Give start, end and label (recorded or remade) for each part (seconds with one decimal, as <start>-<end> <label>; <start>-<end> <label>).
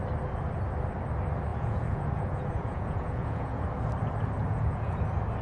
0.0-1.5 recorded; 1.5-3.6 remade; 3.6-4.4 recorded; 4.4-5.0 remade; 5.0-5.4 recorded